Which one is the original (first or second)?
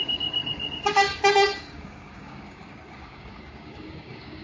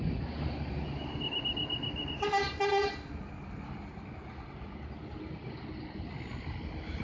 second